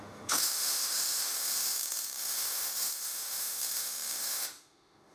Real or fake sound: fake